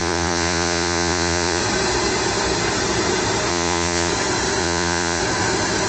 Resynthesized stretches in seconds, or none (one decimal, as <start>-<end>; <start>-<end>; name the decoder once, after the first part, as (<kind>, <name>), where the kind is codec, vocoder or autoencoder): 0.0-1.6 (vocoder, Vocos); 3.5-4.1; 4.6-5.2